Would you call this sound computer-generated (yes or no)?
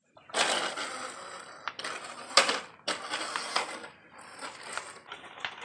no